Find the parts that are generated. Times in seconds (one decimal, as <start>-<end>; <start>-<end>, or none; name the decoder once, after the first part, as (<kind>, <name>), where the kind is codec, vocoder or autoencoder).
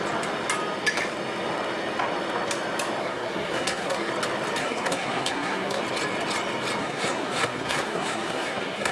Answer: 3.0-4.1 (codec, SNAC); 4.6-5.8; 6.8-8.9